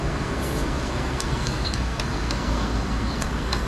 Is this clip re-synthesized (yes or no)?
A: yes